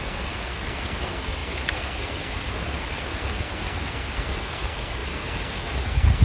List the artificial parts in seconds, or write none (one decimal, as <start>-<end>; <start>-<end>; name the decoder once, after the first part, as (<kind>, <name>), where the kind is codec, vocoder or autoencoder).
0.0-6.2 (codec, SNAC)